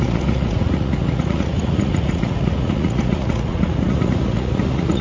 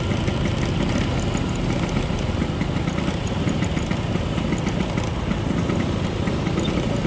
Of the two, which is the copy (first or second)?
first